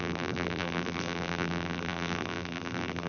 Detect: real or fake fake